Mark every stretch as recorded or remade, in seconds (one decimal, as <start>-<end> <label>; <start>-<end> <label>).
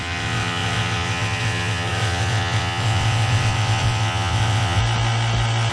0.0-4.8 remade; 4.8-5.7 recorded